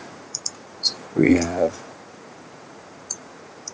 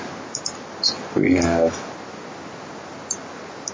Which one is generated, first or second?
first